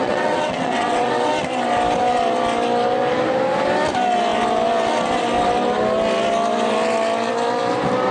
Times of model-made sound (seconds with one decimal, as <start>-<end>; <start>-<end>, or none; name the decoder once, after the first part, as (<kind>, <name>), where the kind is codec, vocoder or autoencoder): 0.0-1.3 (vocoder, WaveNeXt)